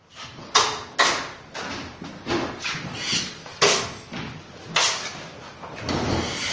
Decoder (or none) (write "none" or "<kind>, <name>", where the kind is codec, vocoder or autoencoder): none